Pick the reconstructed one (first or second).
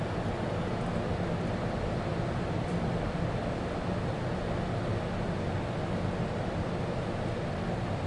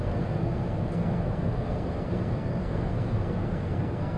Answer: second